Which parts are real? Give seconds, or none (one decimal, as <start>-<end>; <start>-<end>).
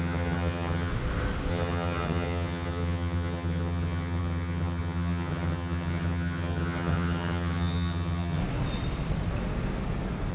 0.9-1.5; 8.4-10.3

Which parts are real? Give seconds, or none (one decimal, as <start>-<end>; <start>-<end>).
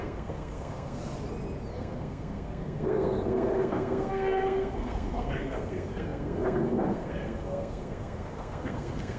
1.0-1.7